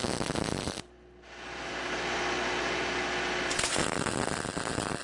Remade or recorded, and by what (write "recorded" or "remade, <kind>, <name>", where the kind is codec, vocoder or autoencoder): recorded